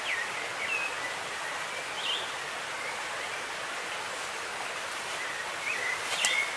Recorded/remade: recorded